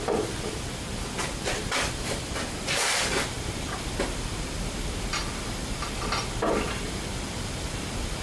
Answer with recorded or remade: remade